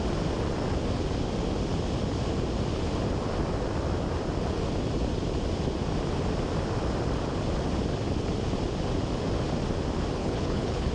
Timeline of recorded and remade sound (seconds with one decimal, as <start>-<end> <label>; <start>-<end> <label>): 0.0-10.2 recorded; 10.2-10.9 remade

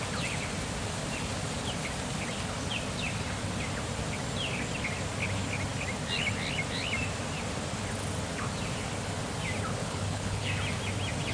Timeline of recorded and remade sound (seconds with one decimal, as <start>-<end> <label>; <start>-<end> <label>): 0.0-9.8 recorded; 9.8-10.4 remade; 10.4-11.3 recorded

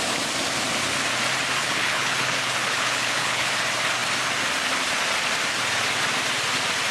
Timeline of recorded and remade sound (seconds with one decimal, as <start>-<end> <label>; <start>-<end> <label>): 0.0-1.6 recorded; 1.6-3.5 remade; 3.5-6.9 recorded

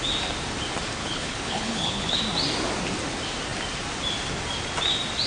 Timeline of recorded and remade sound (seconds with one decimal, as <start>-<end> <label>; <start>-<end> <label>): 0.0-1.0 recorded; 1.0-2.2 remade; 2.2-5.3 recorded